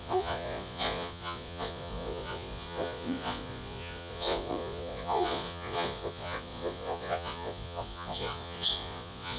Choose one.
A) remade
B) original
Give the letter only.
A